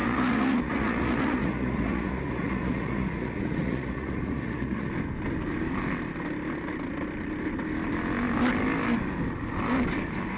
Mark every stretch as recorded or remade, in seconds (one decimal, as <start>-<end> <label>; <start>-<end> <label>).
0.0-4.9 remade; 4.9-10.4 recorded